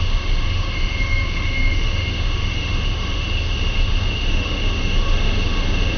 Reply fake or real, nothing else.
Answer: fake